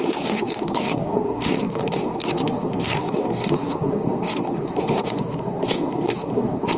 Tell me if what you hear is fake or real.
fake